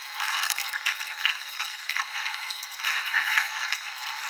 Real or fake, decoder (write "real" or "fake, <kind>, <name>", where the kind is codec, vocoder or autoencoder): fake, codec, SNAC